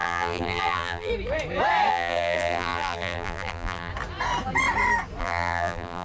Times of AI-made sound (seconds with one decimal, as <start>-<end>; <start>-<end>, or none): 0.0-1.1; 1.9-3.9; 5.2-6.0